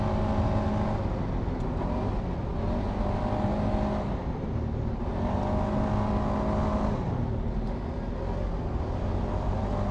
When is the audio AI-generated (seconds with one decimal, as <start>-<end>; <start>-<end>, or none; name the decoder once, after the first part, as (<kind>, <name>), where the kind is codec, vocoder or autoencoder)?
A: none